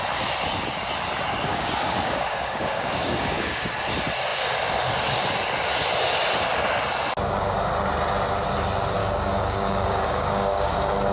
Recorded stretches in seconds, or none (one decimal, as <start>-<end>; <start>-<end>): 0.0-1.5; 3.7-9.0; 10.7-11.1